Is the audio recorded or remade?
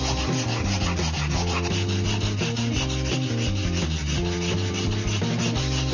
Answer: recorded